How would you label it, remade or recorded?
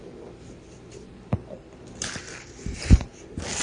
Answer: remade